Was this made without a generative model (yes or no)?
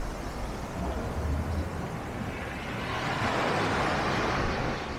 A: yes